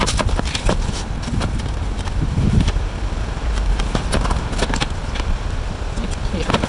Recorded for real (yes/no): yes